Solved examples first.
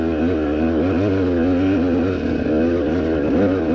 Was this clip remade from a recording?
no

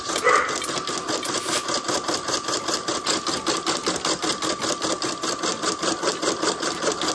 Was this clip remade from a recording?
no